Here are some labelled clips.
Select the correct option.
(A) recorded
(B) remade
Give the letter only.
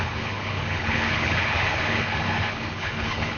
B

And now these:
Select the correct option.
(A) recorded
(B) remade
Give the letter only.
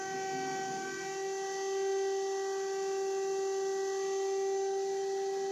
A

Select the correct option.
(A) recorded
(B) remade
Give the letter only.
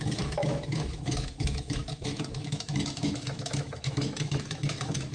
B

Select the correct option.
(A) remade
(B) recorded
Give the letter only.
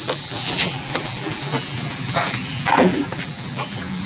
A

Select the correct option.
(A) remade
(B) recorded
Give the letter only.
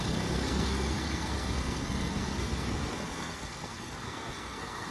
A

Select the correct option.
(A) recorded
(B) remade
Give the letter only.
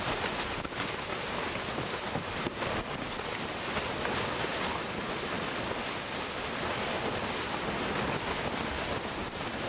A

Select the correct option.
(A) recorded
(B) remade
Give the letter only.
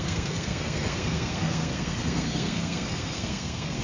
B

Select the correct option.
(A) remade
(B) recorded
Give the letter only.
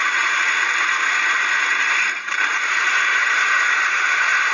A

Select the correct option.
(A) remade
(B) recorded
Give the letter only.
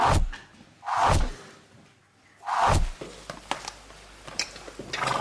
B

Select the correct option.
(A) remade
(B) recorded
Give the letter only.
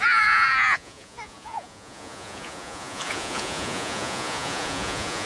A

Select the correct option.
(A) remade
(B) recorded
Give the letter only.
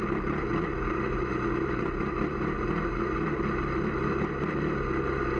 B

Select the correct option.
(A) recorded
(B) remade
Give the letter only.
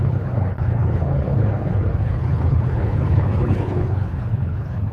B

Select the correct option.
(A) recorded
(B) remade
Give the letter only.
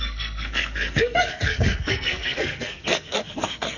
B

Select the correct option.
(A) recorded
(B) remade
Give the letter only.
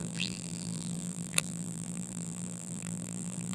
B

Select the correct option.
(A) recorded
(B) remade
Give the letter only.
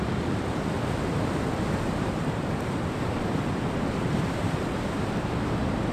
B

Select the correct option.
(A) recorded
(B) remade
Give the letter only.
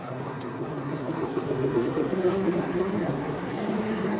B